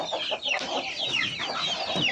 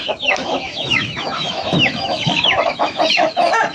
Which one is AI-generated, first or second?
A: second